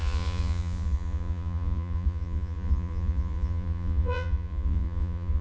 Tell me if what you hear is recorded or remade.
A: remade